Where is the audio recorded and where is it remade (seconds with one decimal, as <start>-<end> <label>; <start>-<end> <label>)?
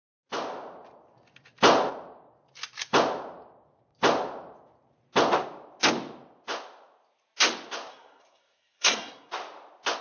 0.0-7.9 recorded; 7.9-9.3 remade; 9.3-10.0 recorded